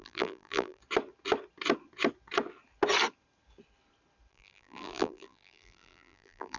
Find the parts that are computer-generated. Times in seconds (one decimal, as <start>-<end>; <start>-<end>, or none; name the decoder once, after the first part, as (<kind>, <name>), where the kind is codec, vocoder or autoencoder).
0.0-0.8 (vocoder, BigVGAN v2); 4.3-6.6